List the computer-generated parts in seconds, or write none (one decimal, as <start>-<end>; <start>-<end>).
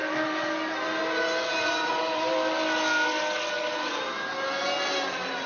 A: none